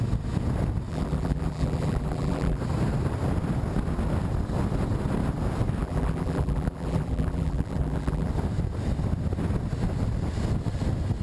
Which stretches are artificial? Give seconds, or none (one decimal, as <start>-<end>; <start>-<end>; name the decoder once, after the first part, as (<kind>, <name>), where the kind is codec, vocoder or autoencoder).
0.9-2.6 (vocoder, BigVGAN v2); 5.8-8.3